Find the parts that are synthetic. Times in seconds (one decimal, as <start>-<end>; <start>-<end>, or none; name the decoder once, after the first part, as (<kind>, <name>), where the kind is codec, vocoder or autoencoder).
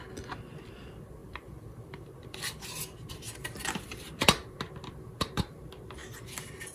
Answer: 1.2-2.7 (vocoder, BigVGAN v2)